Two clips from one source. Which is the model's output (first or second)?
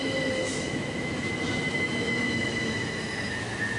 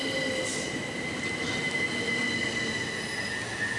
first